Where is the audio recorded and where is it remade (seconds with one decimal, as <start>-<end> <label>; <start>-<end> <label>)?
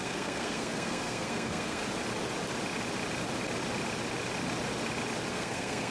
0.0-1.8 remade; 1.8-5.3 recorded; 5.3-5.9 remade